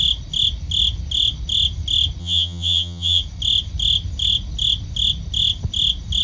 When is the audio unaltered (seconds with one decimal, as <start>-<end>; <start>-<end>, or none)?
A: 0.0-2.2; 3.2-6.2